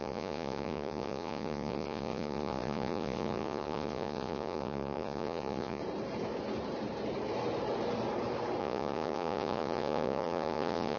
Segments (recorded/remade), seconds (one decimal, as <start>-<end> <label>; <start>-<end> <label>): 0.0-5.8 remade; 5.8-8.6 recorded; 8.6-11.0 remade